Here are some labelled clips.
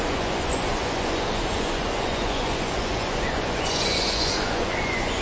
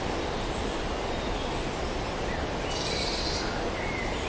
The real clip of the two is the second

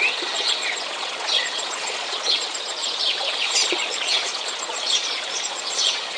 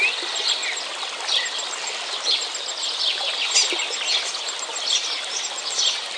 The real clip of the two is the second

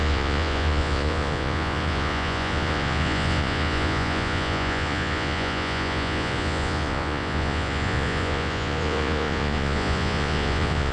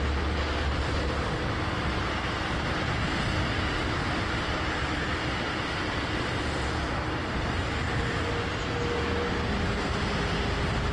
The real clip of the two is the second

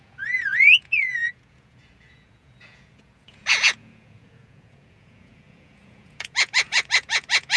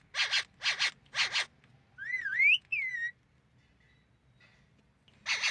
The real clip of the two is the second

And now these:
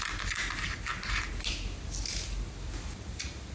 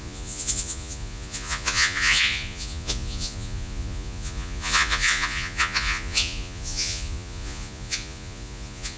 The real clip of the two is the first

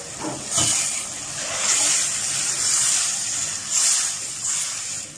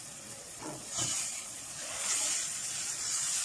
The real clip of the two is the first